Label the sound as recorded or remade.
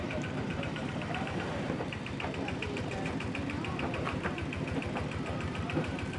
remade